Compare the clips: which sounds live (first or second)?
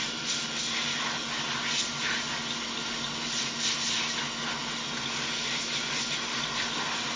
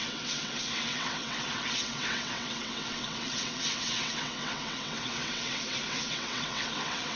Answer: first